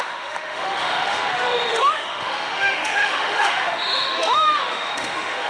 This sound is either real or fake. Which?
fake